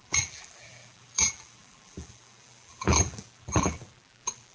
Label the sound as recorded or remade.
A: remade